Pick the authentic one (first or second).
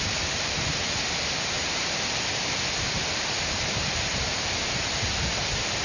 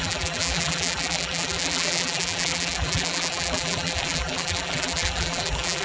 first